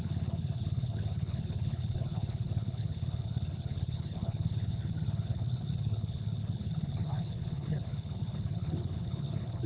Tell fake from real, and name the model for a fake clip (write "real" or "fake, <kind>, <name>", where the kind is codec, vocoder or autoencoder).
fake, codec, HILCodec